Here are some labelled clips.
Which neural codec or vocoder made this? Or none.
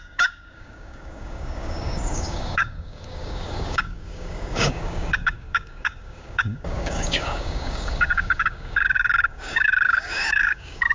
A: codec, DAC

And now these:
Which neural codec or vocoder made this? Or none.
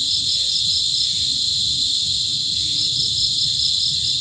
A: none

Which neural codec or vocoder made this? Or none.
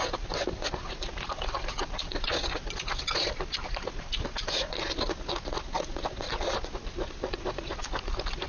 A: none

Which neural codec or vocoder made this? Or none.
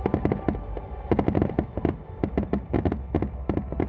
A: none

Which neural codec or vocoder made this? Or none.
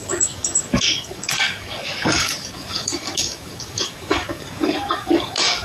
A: codec, DAC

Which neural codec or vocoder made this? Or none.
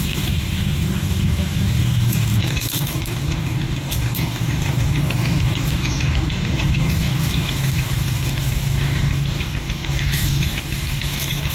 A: codec, DAC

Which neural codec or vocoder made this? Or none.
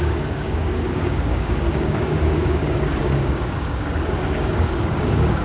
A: codec, DAC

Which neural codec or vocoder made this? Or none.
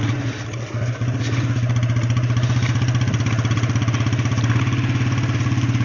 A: none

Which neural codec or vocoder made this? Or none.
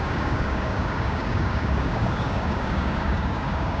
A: codec, DAC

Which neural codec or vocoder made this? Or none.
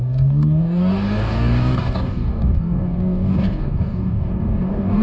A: codec, DAC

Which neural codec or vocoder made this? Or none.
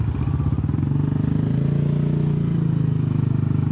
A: none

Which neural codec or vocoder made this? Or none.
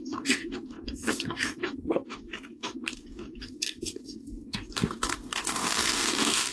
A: codec, DAC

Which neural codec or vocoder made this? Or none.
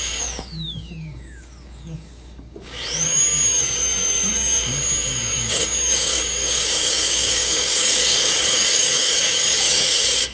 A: codec, DAC